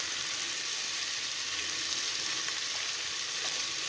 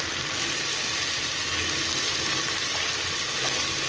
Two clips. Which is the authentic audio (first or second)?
second